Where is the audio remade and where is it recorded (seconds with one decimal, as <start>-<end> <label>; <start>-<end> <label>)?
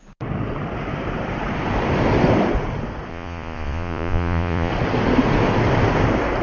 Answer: 0.0-3.1 recorded; 3.1-4.7 remade; 4.7-6.4 recorded